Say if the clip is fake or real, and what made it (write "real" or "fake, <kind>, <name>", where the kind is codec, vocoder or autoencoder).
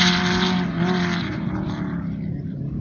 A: real